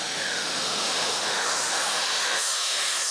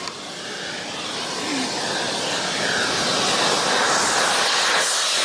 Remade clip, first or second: first